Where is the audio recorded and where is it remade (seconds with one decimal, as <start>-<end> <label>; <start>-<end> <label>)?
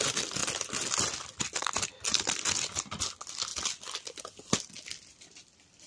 0.0-0.4 recorded; 0.4-1.8 remade; 1.8-3.5 recorded; 3.5-4.2 remade; 4.2-5.9 recorded